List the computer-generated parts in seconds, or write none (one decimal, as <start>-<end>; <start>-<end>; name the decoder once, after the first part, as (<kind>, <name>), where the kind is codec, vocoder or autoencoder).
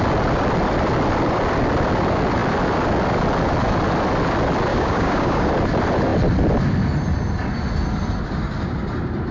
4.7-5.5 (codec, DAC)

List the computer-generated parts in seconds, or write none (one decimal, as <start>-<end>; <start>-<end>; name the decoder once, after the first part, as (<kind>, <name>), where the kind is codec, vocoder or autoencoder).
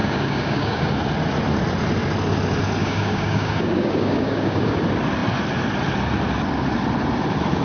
0.0-0.9 (codec, DAC); 2.8-4.8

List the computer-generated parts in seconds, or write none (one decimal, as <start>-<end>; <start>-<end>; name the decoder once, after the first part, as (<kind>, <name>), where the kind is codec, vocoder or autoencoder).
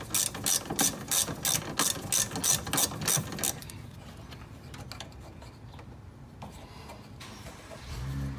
none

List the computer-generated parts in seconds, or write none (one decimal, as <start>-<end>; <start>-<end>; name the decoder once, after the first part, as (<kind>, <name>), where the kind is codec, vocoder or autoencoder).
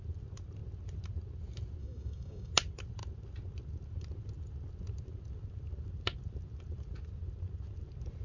1.8-2.5 (codec, DAC)